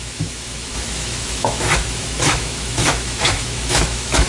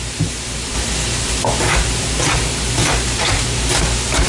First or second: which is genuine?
second